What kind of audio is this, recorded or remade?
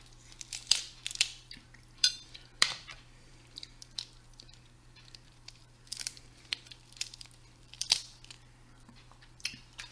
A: remade